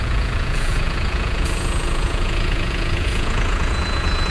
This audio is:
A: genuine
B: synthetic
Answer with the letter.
B